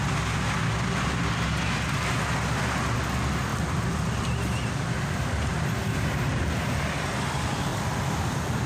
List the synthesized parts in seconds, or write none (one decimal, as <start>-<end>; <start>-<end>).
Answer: 3.5-4.7